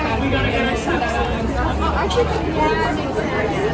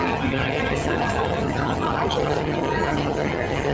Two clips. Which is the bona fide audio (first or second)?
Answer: first